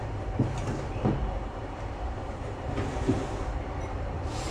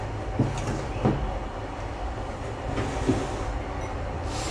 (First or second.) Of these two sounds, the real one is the second